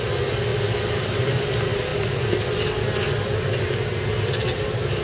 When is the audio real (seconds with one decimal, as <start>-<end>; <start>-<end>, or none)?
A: 0.0-5.0